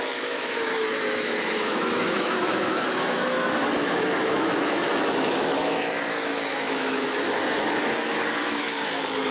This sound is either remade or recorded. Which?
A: remade